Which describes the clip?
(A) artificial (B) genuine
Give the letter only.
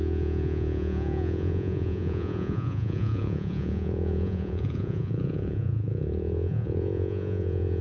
A